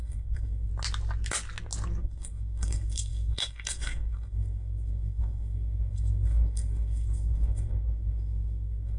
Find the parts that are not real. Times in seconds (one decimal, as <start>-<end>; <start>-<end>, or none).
0.0-0.7; 2.0-9.0